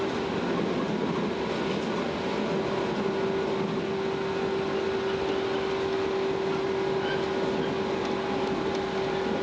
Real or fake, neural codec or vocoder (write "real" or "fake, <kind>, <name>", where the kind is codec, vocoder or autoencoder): real